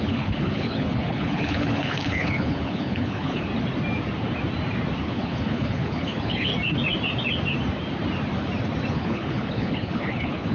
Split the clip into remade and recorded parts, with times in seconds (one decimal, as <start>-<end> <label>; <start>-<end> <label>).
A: 0.0-3.5 remade; 3.5-5.0 recorded; 5.0-6.5 remade; 6.5-8.9 recorded; 8.9-10.5 remade

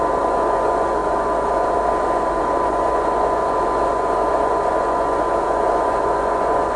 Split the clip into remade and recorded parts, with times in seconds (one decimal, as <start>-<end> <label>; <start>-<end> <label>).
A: 0.0-6.8 remade

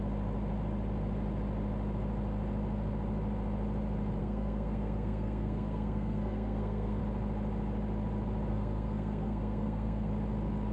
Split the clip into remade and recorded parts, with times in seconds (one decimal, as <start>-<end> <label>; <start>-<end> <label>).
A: 0.0-4.2 recorded; 4.2-7.0 remade; 7.0-8.5 recorded; 8.5-10.1 remade; 10.1-10.7 recorded

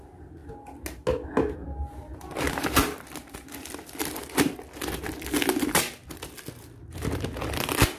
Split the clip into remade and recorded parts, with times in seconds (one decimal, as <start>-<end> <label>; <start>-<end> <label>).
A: 0.0-8.0 recorded